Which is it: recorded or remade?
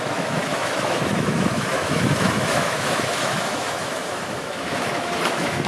remade